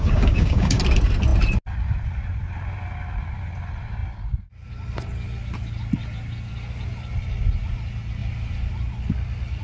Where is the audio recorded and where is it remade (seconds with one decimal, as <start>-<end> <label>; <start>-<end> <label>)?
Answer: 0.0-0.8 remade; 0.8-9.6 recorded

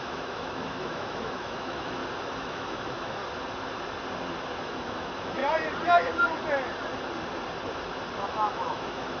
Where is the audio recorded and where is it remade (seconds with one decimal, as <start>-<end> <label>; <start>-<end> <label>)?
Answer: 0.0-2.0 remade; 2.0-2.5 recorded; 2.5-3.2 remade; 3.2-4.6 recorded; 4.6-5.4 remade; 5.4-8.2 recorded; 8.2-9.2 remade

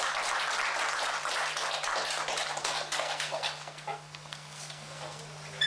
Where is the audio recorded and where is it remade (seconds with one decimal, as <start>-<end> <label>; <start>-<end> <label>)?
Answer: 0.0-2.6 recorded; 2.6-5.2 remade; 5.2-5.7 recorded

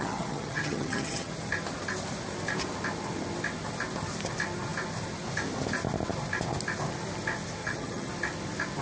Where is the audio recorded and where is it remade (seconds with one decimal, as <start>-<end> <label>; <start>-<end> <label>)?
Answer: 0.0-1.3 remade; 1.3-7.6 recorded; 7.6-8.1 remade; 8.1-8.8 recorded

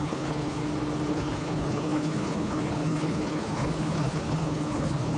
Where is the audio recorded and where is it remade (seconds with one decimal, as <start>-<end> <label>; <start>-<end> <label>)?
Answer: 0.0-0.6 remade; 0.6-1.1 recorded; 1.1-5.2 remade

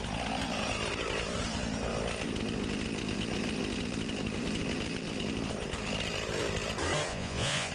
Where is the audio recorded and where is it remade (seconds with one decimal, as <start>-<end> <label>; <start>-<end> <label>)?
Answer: 0.0-7.1 recorded; 7.1-7.7 remade

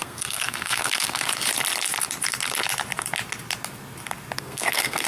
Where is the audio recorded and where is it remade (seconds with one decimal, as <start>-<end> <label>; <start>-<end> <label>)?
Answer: 0.0-1.3 remade; 1.3-4.4 recorded; 4.4-5.1 remade